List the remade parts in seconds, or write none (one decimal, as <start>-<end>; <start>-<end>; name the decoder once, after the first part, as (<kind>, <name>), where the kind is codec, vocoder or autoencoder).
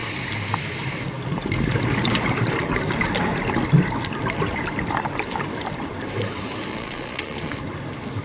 6.7-7.6 (vocoder, Vocos)